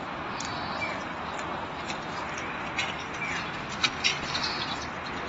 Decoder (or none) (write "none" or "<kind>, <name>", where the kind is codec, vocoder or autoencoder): none